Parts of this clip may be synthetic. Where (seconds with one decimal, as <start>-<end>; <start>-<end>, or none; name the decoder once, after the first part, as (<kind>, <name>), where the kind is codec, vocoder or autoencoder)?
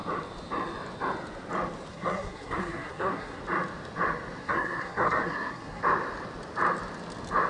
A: 1.9-3.4 (codec, SNAC); 4.4-5.8